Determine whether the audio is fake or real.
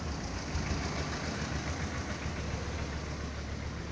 real